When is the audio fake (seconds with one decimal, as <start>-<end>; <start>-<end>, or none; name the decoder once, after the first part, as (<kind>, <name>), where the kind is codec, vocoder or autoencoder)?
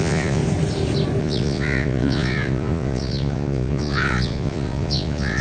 0.0-0.4 (vocoder, Vocos); 1.2-5.4